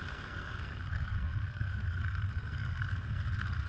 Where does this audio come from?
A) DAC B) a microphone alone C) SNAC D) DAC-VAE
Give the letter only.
C